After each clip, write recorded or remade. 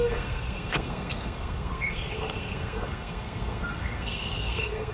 remade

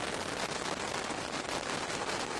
recorded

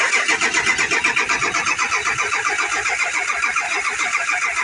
recorded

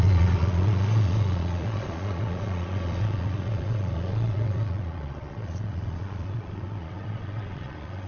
remade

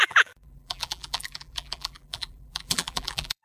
remade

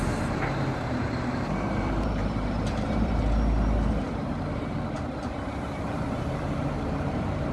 remade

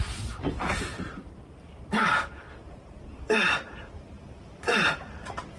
remade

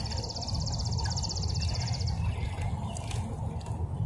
recorded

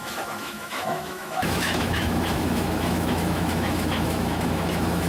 remade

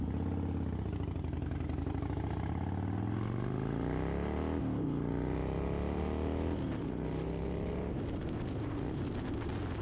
recorded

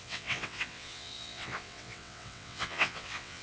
remade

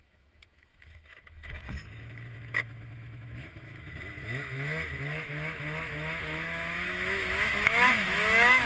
remade